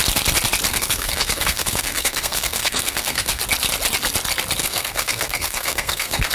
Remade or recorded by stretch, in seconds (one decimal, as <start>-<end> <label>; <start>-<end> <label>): 0.0-0.7 recorded; 0.7-3.4 remade; 3.4-4.6 recorded; 4.6-6.3 remade